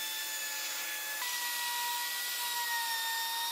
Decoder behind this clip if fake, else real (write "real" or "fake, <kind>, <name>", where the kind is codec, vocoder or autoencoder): real